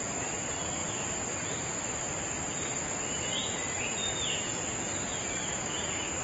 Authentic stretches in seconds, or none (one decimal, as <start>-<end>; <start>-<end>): 0.0-6.2